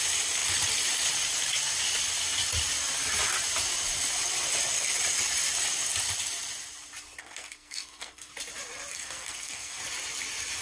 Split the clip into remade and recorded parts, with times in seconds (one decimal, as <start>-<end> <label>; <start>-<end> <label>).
0.0-7.2 recorded; 7.2-8.3 remade; 8.3-8.9 recorded; 8.9-9.8 remade; 9.8-10.6 recorded